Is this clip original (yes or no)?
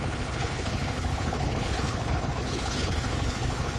no